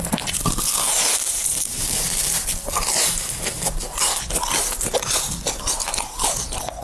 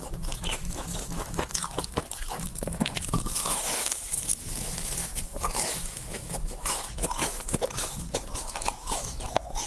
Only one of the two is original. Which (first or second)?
first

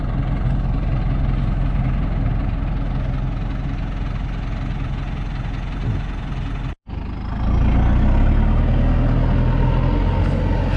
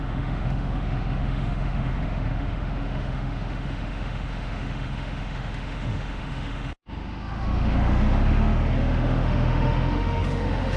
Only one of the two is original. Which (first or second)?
first